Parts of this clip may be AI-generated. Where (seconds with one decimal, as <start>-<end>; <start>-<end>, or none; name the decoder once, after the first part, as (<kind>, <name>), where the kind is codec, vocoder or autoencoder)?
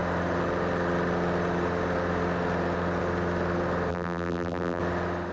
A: 3.9-4.8 (vocoder, BigVGAN v2)